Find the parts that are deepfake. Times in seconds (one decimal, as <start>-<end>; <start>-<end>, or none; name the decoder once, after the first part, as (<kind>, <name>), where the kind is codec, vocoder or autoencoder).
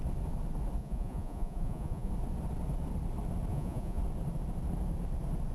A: 0.8-2.1 (vocoder, Vocos); 3.5-4.0